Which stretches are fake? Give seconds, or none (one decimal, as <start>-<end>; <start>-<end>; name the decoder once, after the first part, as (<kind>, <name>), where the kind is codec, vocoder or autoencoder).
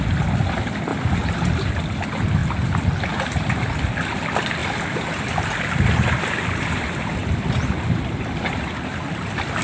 0.9-1.5 (vocoder, BigVGAN v2); 4.6-6.2; 7.2-8.4